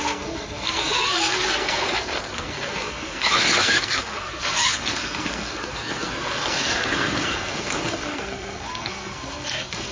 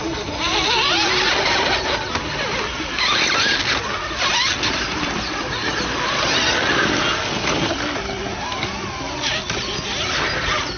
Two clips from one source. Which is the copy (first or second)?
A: first